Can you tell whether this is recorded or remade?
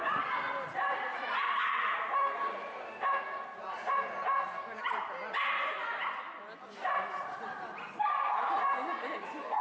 recorded